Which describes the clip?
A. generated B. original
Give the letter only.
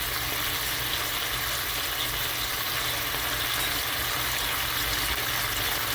B